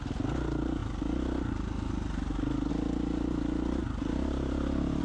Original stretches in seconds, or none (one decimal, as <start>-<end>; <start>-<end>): 0.0-3.8